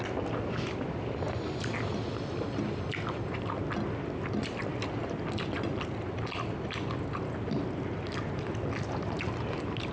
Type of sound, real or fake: real